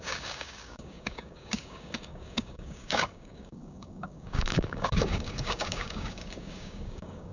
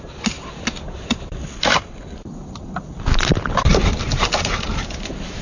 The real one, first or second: second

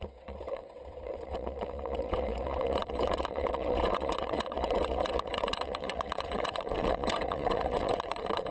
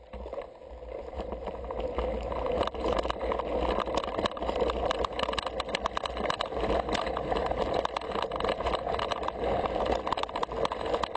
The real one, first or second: second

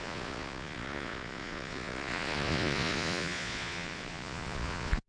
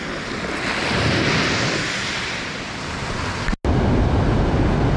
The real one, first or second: second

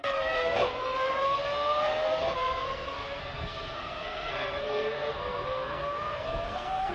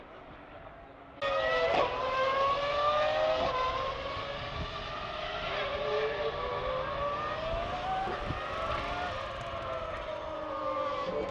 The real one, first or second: second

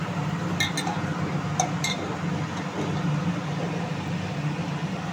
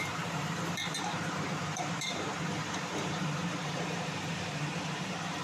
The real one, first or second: first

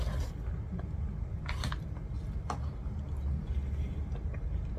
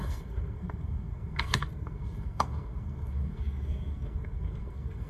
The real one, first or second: first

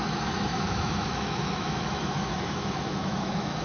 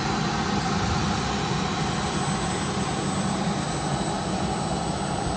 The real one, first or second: second